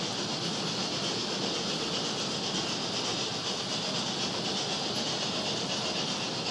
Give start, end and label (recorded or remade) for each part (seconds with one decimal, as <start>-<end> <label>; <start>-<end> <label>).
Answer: 0.0-6.5 recorded